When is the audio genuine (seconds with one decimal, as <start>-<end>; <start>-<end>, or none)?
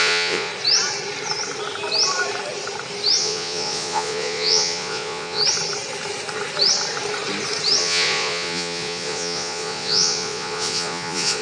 0.5-3.2; 5.4-7.8